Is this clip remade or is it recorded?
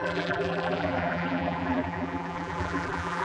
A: remade